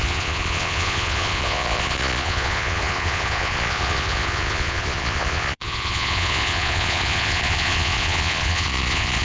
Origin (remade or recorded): remade